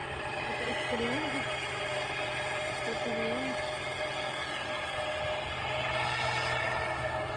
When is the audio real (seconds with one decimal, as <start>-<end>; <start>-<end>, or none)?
3.1-7.4